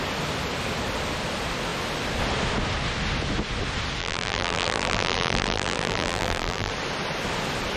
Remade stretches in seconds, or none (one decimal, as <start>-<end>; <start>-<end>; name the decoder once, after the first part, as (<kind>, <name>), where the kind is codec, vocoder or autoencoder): 4.0-6.7 (vocoder, BigVGAN v2)